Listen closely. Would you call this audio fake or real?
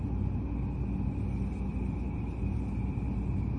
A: real